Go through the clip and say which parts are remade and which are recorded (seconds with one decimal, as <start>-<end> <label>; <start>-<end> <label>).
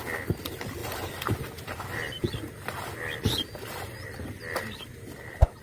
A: 0.0-5.6 recorded